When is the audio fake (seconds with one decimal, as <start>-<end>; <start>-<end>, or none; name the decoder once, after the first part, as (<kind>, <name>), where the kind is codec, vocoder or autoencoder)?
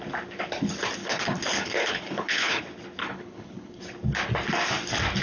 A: 1.0-2.6 (codec, HILCodec); 3.0-3.8